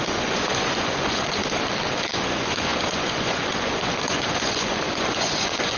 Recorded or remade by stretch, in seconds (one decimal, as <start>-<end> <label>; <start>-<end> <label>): 0.0-1.4 remade; 1.4-1.9 recorded; 1.9-5.8 remade